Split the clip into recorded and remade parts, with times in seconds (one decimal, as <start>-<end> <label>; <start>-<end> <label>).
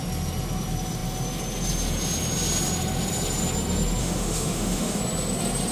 0.0-4.0 recorded; 4.0-5.0 remade; 5.0-5.7 recorded